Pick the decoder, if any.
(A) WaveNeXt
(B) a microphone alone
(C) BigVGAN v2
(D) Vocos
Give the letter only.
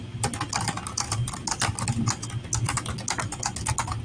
B